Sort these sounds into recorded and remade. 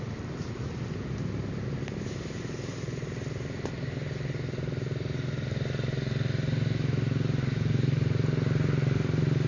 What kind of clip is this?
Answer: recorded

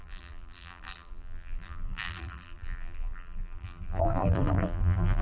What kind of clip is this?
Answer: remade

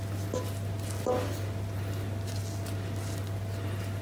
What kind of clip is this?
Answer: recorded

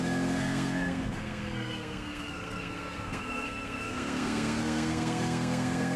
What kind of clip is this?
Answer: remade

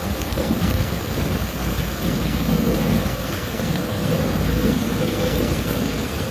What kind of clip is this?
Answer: remade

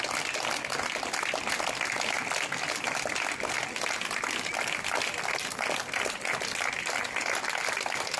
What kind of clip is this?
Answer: recorded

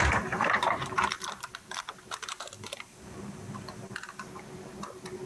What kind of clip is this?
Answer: remade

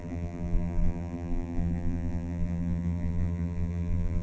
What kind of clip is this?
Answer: remade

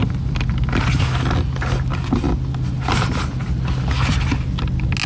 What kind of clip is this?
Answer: recorded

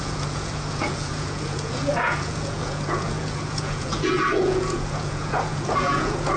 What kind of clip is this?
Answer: remade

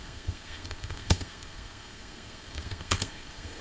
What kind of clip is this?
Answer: remade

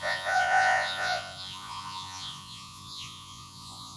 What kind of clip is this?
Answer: remade